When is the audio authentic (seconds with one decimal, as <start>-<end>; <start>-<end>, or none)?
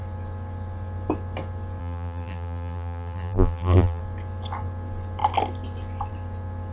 0.0-1.8; 4.0-6.7